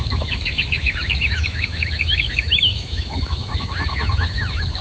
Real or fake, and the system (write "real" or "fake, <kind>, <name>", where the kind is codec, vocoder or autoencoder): fake, autoencoder, DAC-VAE